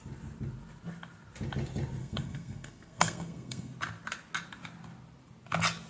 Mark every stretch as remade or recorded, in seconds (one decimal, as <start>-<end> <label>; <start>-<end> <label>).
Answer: 0.0-2.0 recorded; 2.0-3.7 remade; 3.7-5.9 recorded